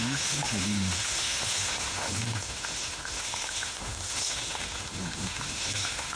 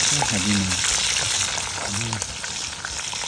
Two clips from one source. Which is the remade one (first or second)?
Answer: first